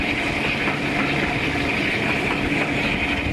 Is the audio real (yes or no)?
yes